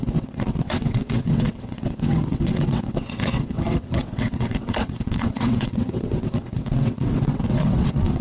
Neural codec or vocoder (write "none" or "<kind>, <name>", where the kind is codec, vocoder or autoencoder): vocoder, WaveNeXt